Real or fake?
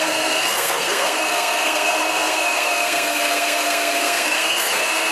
fake